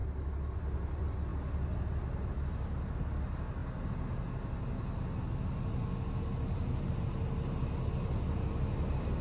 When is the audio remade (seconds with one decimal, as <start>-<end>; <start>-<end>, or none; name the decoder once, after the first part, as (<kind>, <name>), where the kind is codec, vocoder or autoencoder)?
none